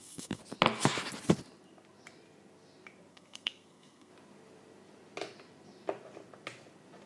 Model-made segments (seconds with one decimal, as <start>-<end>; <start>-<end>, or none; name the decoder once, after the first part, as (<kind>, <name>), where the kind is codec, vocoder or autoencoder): 0.0-0.4 (codec, SNAC); 3.1-4.1